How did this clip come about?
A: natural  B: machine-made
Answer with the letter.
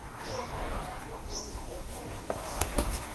B